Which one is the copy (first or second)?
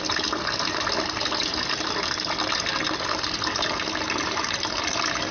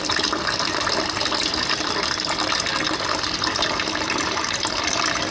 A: second